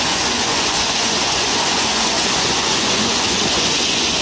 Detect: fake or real fake